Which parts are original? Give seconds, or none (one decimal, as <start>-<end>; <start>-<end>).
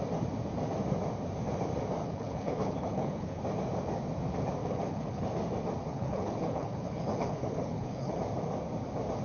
0.0-2.0; 3.4-4.6; 5.2-5.9; 8.2-9.2